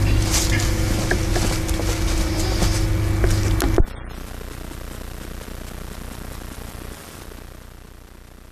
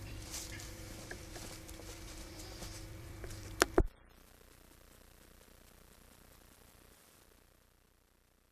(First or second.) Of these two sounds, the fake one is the second